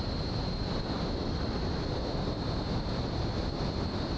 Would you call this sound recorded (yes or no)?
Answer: yes